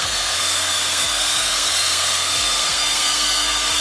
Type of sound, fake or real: fake